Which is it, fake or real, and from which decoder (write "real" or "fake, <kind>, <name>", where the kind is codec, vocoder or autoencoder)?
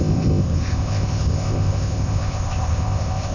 fake, codec, ZipCodec